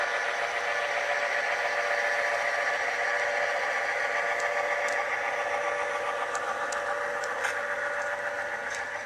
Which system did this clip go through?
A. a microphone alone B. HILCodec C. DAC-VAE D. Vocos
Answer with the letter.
A